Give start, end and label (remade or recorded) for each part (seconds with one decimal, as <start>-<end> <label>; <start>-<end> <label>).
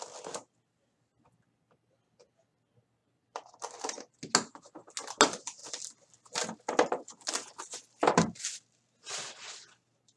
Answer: 0.0-3.0 recorded; 3.0-4.1 remade; 4.1-10.2 recorded